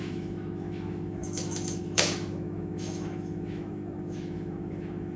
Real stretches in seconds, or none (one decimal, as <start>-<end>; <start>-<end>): none